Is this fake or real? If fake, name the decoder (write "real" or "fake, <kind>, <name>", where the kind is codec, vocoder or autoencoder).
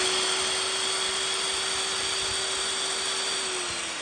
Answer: real